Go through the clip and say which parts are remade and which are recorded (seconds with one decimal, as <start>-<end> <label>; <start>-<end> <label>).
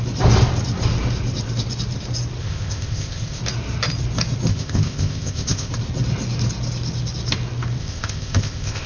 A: 0.0-2.4 recorded; 2.4-3.4 remade; 3.4-4.5 recorded; 4.5-5.7 remade; 5.7-7.8 recorded; 7.8-8.9 remade